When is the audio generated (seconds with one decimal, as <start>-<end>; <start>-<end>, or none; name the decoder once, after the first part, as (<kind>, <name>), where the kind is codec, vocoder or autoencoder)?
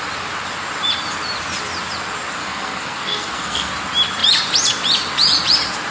2.4-3.7 (codec, SNAC)